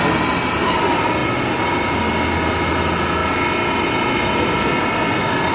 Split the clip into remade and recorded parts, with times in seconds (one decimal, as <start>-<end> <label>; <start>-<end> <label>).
0.0-5.5 recorded